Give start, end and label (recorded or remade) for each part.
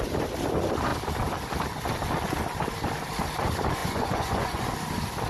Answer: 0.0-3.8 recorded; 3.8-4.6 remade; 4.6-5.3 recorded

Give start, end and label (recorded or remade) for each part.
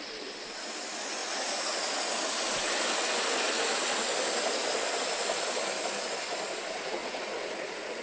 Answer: 0.0-7.0 recorded; 7.0-8.0 remade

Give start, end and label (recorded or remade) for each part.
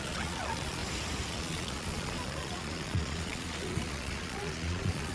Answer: 0.0-0.8 remade; 0.8-1.3 recorded; 1.3-5.1 remade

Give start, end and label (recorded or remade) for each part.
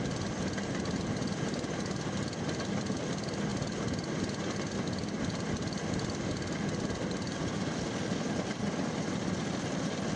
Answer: 0.0-10.2 recorded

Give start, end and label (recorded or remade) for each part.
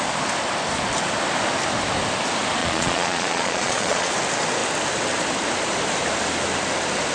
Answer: 0.0-2.6 recorded; 2.6-4.1 remade; 4.1-7.1 recorded